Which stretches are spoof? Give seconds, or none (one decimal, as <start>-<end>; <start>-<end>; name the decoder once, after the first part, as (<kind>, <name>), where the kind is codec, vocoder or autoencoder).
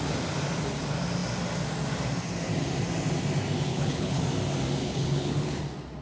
3.7-4.2 (codec, HILCodec); 4.8-5.6